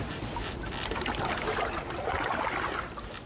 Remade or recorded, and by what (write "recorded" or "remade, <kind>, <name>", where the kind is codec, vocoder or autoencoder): recorded